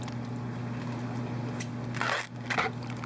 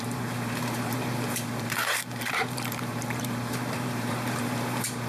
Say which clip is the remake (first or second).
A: second